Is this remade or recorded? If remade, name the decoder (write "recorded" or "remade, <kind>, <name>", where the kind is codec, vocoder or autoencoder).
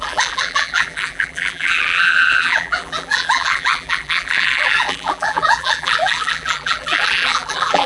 remade, vocoder, BigVGAN v2